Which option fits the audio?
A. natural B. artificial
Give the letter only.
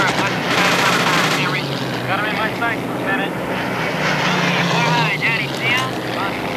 A